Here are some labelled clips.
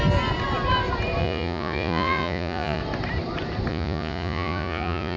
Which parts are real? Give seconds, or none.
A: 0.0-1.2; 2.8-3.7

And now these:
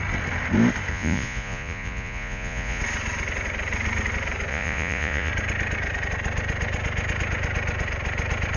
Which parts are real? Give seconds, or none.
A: 0.0-0.9; 2.8-4.5; 5.3-8.6

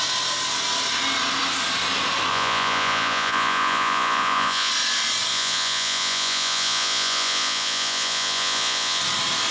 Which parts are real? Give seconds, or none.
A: 0.0-2.3; 4.7-5.3; 9.0-9.5

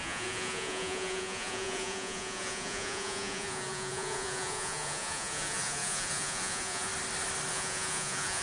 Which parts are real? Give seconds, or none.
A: 6.9-7.5

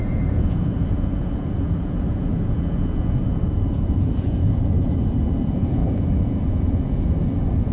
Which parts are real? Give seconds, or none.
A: none